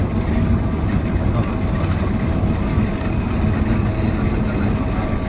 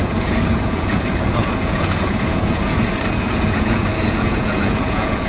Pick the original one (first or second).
first